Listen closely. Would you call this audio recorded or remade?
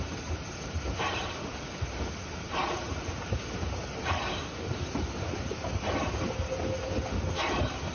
recorded